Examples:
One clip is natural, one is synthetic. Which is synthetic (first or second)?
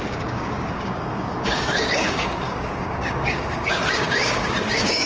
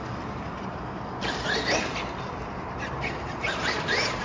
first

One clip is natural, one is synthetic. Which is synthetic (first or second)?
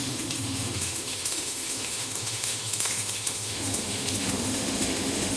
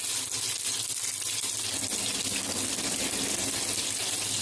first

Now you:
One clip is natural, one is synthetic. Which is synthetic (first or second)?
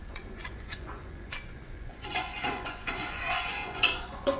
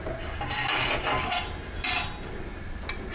first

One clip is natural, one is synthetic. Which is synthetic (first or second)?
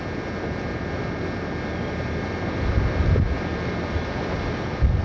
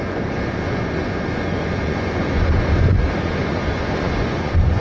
second